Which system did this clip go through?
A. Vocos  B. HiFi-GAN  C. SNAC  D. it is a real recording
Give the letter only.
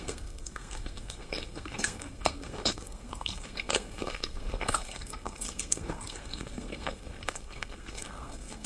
C